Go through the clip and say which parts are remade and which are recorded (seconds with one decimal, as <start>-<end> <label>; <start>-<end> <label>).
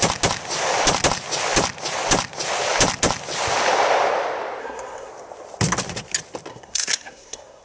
0.0-4.6 recorded; 4.6-5.1 remade; 5.1-6.5 recorded; 6.5-7.6 remade